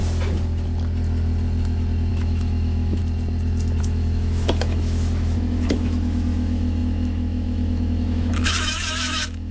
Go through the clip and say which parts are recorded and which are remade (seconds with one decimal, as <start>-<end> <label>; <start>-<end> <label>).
0.0-2.1 recorded; 2.1-3.0 remade; 3.0-3.8 recorded; 3.8-9.5 remade